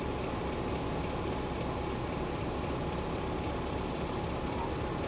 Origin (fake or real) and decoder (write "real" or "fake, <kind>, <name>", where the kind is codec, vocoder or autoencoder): real